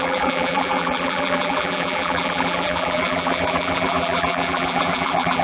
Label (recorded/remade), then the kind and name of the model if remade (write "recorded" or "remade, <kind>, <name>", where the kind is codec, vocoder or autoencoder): remade, vocoder, BigVGAN v2